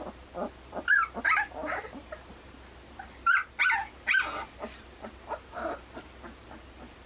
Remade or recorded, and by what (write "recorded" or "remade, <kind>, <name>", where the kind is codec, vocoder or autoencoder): recorded